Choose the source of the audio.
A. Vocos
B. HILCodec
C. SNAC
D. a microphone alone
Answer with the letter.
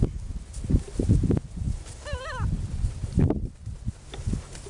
D